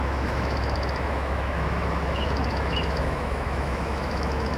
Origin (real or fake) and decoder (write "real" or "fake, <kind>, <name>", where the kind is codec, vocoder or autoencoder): fake, autoencoder, DAC-VAE